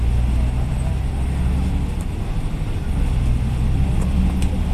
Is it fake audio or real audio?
real